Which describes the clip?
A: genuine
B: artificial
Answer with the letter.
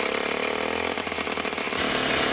A